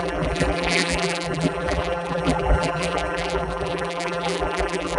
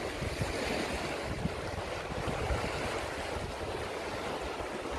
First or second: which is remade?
first